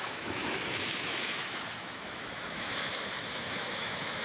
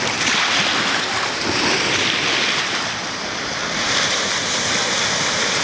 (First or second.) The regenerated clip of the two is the first